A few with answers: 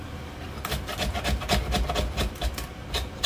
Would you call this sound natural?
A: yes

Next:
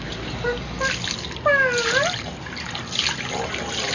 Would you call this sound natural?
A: yes